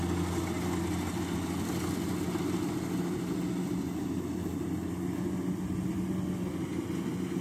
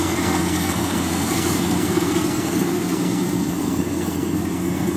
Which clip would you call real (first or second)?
first